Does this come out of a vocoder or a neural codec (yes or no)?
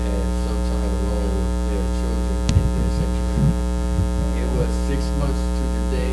no